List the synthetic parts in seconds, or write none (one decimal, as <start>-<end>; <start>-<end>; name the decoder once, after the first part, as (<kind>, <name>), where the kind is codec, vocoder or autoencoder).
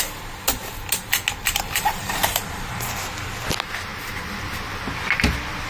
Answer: 1.4-3.1 (vocoder, BigVGAN v2)